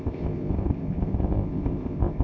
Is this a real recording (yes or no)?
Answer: no